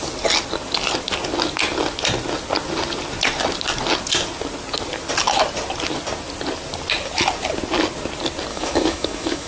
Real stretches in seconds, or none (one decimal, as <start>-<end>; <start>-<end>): 0.0-8.5